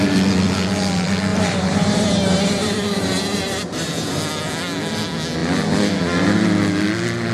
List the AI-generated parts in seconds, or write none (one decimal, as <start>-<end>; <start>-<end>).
1.3-4.2